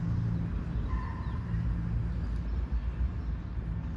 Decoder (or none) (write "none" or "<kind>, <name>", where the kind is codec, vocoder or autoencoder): none